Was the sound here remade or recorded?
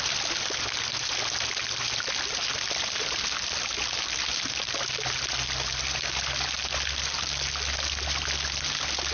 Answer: recorded